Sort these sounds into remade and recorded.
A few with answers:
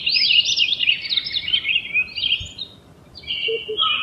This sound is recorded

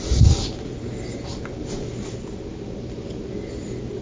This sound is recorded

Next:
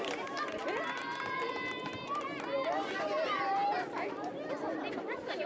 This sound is recorded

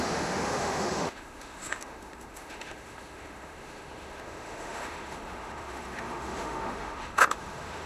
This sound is remade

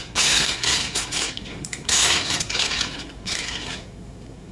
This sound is remade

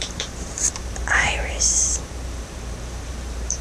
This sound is remade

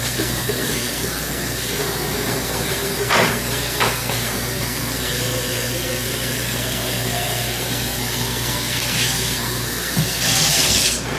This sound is remade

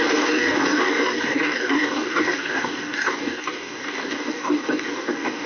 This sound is remade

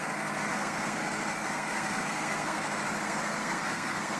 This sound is remade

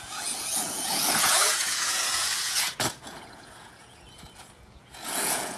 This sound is remade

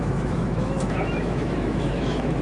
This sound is remade